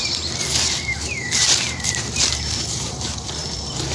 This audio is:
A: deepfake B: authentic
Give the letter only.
A